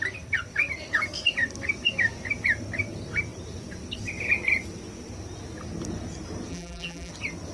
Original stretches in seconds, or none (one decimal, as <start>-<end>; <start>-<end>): 0.0-6.5; 7.1-7.5